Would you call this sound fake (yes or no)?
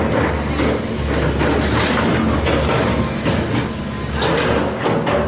no